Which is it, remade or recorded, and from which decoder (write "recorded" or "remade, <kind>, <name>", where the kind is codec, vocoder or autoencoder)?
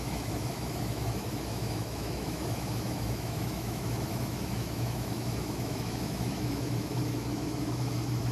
remade, autoencoder, DAC-VAE